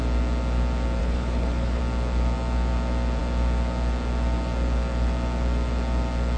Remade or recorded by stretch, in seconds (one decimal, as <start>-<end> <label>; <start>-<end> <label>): 0.0-1.0 recorded; 1.0-1.8 remade; 1.8-6.4 recorded